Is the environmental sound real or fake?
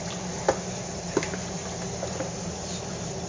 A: real